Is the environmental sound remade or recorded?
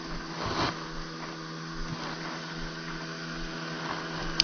recorded